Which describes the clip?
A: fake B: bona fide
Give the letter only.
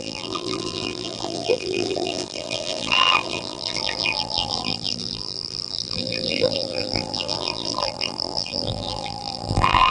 A